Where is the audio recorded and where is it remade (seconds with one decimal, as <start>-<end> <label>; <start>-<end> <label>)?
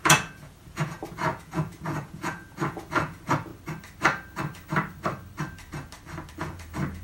0.0-3.5 remade; 3.5-6.3 recorded; 6.3-7.0 remade